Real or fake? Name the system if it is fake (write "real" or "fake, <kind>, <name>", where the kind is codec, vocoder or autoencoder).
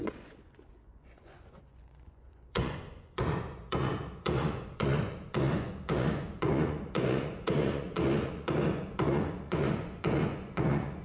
fake, vocoder, Vocos